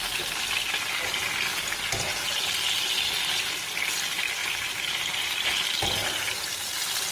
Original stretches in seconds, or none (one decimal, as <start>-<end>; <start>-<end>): 0.0-4.4; 5.2-7.1